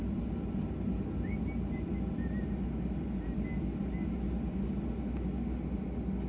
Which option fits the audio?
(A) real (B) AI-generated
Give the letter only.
A